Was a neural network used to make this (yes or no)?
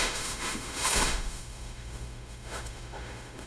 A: yes